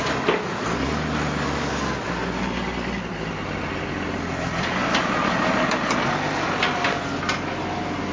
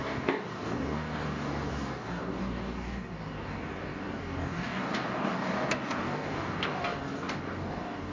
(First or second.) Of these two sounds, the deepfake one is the second